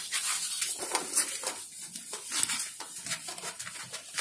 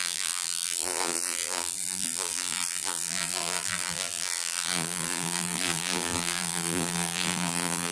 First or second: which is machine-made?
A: second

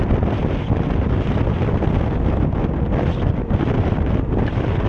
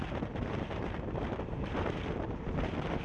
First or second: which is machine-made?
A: second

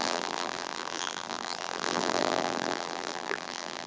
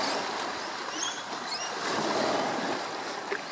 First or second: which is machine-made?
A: first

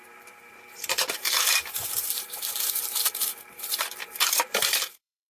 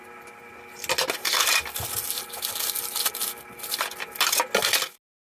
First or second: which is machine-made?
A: first